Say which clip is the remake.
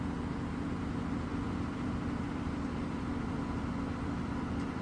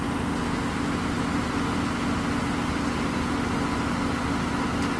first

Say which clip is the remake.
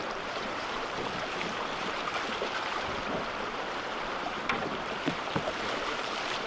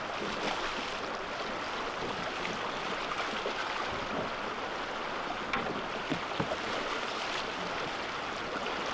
first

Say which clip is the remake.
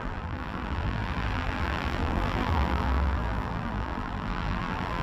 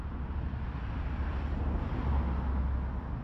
first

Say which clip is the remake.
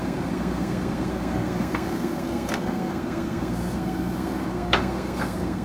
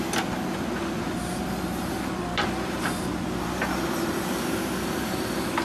first